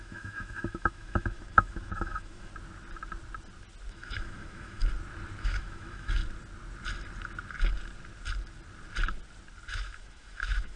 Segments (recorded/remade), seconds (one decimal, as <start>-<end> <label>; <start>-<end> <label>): 0.0-2.5 remade; 2.5-3.9 recorded; 3.9-4.8 remade; 4.8-5.4 recorded; 5.4-6.2 remade; 6.2-9.7 recorded; 9.7-10.8 remade